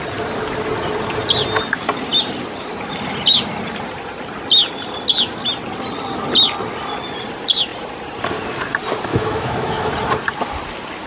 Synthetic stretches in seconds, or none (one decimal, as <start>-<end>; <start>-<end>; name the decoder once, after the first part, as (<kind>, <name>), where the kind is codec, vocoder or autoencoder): 9.1-9.9 (autoencoder, DAC-VAE)